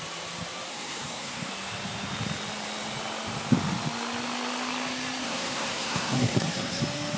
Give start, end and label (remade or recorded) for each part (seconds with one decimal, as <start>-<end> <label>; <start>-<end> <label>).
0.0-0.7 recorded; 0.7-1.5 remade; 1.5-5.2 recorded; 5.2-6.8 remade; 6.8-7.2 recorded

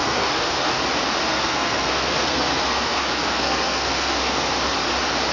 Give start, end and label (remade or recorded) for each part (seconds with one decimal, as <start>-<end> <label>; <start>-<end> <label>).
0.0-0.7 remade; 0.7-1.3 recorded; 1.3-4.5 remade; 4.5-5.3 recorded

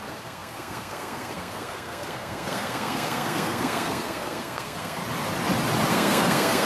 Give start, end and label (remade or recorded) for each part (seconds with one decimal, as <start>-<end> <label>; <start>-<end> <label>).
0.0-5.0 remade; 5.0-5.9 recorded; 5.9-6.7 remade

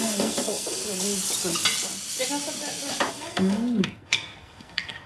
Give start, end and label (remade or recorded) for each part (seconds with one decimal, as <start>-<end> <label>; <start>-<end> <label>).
0.0-0.8 remade; 0.8-3.1 recorded; 3.1-5.1 remade

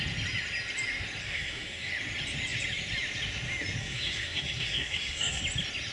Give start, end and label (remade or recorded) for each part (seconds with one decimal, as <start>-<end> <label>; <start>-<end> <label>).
0.0-1.2 recorded; 1.2-1.9 remade; 1.9-3.8 recorded; 3.8-5.4 remade; 5.4-5.9 recorded